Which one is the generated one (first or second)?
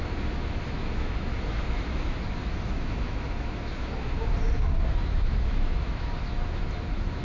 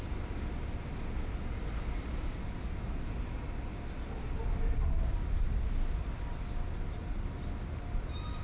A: first